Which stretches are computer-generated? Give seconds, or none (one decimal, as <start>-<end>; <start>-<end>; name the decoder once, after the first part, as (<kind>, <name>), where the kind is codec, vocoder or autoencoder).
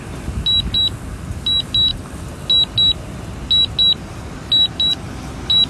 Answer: none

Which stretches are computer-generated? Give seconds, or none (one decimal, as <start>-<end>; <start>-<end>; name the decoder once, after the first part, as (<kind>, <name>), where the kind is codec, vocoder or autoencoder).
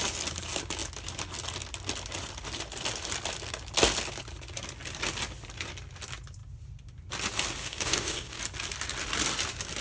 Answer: 7.6-8.4 (codec, DAC)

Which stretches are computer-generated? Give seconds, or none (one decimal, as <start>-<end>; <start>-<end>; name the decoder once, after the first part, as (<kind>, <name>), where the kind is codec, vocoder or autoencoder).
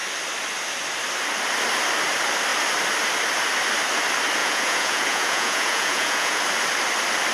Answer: 4.4-6.4 (vocoder, Vocos)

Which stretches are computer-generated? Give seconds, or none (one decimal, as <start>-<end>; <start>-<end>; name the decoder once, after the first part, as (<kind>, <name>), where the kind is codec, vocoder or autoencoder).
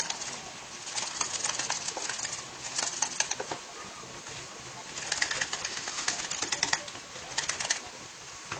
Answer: 5.7-6.2 (autoencoder, DAC-VAE)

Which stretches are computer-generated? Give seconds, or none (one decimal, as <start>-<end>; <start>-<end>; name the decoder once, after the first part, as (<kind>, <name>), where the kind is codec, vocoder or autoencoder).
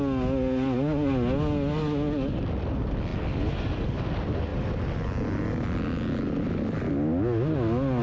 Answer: none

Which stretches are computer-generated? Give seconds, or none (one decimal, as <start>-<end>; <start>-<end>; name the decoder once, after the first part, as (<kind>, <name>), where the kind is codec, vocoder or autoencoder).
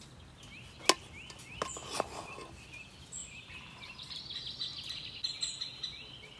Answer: 3.2-4.2 (vocoder, BigVGAN v2)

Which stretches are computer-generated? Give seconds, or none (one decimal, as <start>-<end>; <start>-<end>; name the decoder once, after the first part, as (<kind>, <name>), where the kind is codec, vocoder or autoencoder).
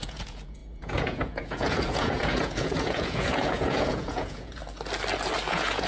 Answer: 0.0-4.6 (vocoder, Vocos); 5.5-5.9